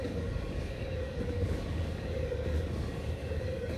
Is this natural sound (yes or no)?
no